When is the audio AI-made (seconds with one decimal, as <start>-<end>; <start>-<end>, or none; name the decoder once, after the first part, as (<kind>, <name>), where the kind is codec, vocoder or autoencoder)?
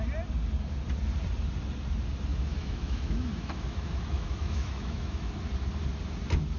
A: 2.3-5.3 (autoencoder, DAC-VAE)